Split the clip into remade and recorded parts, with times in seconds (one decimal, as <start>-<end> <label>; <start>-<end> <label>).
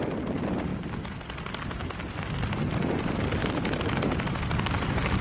0.0-3.4 recorded; 3.4-4.0 remade; 4.0-5.2 recorded